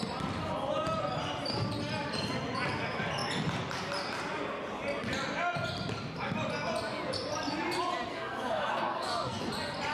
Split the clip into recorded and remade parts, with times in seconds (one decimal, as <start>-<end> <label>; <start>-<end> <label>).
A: 0.0-8.1 recorded; 8.1-9.4 remade; 9.4-9.9 recorded